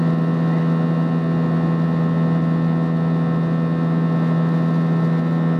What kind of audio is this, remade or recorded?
recorded